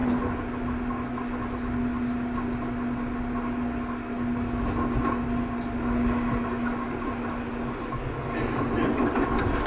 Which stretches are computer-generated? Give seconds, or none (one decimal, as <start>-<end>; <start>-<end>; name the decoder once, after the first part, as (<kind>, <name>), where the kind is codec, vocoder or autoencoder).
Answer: none